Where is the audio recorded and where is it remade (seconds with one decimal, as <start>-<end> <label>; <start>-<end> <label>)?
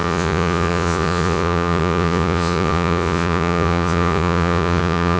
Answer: 0.0-5.2 remade